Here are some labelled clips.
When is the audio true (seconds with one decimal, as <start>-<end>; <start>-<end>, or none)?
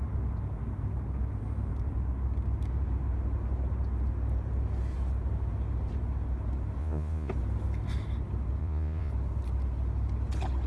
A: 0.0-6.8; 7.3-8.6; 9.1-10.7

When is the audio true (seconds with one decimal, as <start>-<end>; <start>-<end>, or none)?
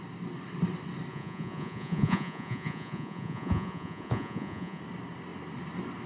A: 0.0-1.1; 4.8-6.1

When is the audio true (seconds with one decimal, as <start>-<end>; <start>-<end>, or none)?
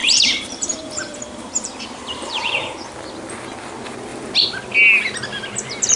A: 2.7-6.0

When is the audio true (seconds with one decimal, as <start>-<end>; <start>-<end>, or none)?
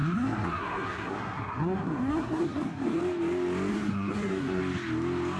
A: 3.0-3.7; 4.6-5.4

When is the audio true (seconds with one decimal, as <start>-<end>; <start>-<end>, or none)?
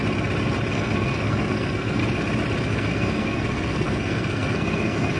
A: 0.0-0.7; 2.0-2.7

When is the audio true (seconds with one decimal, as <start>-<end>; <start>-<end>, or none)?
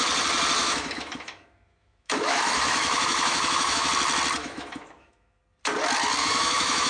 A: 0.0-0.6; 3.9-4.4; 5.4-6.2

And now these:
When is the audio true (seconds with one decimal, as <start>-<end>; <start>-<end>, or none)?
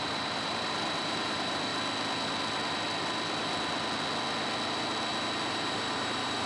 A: 1.7-5.5